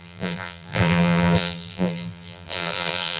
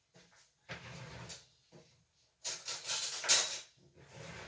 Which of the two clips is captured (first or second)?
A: second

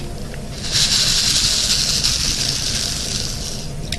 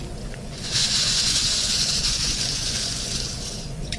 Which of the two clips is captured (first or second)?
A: first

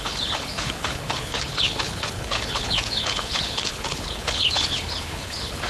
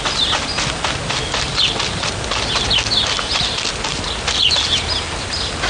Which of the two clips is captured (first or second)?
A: second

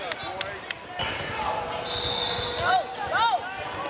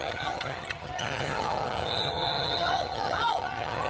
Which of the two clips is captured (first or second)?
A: first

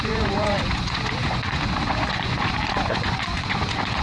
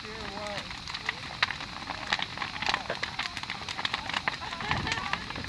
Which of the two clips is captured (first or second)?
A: second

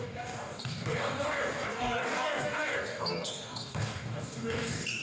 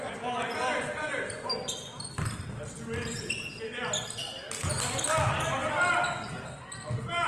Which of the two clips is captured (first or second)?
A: second